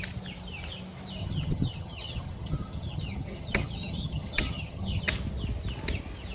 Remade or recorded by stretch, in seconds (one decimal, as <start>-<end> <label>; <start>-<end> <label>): 0.0-1.2 recorded; 1.2-5.0 remade; 5.0-6.3 recorded